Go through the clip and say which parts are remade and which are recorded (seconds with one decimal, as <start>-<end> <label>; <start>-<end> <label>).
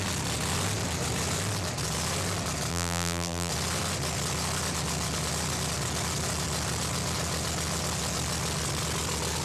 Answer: 0.0-2.7 recorded; 2.7-3.5 remade; 3.5-9.4 recorded